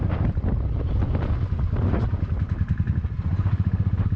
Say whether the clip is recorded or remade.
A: recorded